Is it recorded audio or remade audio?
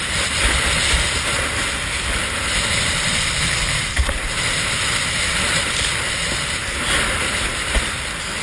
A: recorded